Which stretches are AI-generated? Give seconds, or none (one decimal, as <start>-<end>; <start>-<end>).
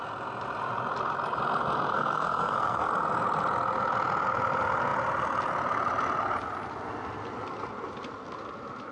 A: 1.9-2.9